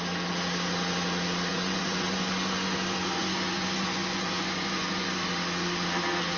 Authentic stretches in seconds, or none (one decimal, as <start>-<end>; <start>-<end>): 0.0-1.5; 5.3-6.4